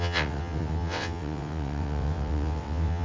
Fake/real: fake